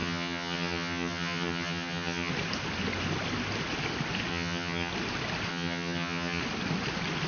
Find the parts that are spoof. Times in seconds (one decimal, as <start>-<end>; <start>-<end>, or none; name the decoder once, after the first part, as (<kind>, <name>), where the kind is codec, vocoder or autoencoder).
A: 0.0-2.3 (vocoder, HiFi-GAN); 4.3-4.9; 5.5-6.4